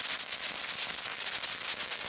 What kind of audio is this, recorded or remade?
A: recorded